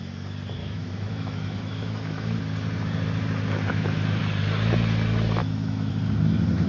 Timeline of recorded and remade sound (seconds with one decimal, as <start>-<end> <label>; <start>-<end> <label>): 0.0-0.6 recorded; 0.6-2.4 remade; 2.4-3.7 recorded; 3.7-4.2 remade; 4.2-5.4 recorded; 5.4-5.9 remade; 5.9-6.7 recorded